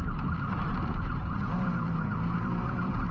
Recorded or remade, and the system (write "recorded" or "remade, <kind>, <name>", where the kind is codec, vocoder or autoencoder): remade, vocoder, BigVGAN v2